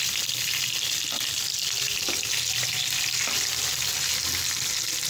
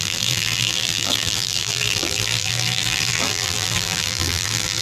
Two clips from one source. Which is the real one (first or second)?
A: first